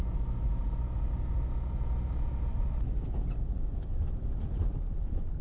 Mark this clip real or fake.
real